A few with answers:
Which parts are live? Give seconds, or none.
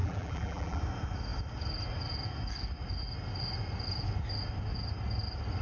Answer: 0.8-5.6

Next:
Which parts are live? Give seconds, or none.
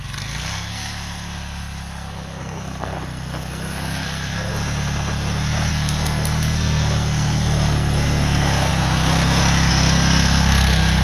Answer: 4.5-5.7; 8.7-9.7